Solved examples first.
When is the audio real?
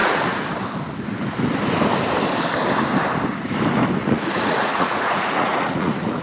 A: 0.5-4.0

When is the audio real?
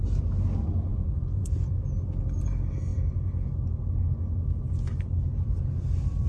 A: 0.0-0.9; 1.8-6.3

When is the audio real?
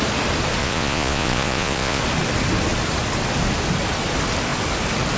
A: 0.0-0.6; 2.0-5.2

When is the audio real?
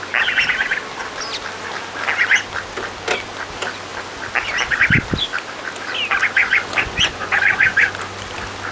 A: 0.0-6.4; 7.9-8.7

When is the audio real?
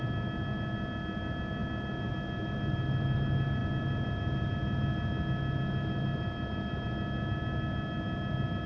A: 0.0-8.7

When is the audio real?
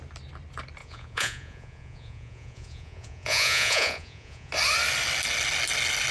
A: 0.0-0.8; 4.5-6.1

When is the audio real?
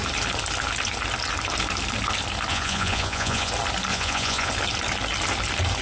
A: 0.0-2.5; 3.5-3.9; 4.5-5.8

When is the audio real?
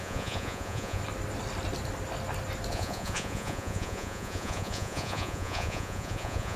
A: 1.0-2.7